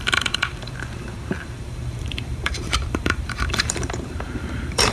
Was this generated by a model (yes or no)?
yes